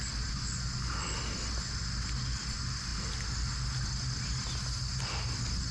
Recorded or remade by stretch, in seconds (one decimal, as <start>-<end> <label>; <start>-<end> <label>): 0.0-5.7 recorded